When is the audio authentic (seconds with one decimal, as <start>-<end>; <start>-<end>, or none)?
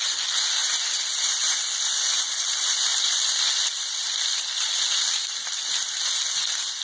0.0-6.8